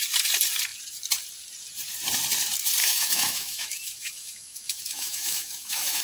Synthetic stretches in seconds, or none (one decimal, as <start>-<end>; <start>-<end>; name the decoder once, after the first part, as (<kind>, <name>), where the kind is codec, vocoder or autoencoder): 2.8-6.0 (autoencoder, DAC-VAE)